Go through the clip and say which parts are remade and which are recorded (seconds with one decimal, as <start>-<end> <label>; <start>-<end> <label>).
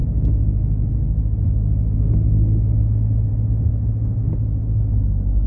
0.0-3.3 remade; 3.3-5.5 recorded